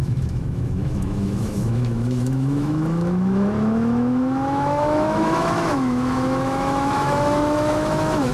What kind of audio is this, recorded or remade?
remade